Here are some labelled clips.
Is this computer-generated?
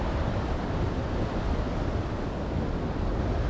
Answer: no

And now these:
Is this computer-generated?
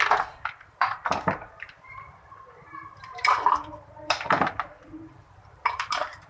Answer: yes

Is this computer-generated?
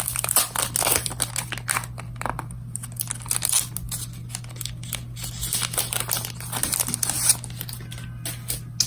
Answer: no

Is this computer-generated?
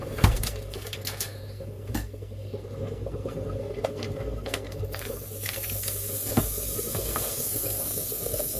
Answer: yes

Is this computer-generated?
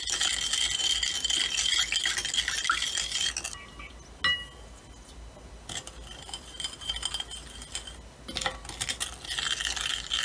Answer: no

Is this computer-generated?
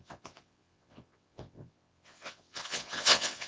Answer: yes